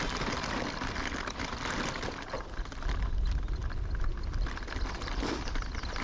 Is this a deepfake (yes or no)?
yes